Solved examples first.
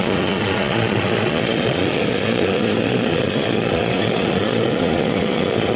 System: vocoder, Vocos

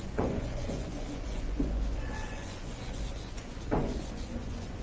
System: vocoder, Vocos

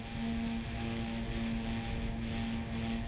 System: none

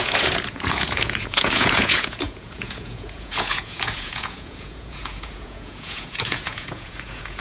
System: vocoder, Vocos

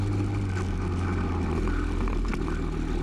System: none